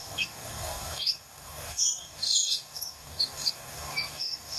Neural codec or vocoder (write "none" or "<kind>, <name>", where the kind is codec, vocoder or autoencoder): codec, DAC